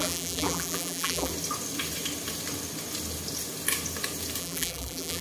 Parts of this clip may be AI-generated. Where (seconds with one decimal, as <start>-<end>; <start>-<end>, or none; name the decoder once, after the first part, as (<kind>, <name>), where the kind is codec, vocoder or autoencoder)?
0.0-1.3 (vocoder, BigVGAN v2); 4.4-5.2